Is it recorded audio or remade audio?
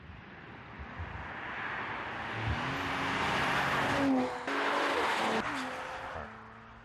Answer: recorded